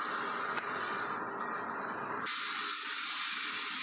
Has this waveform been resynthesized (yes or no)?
no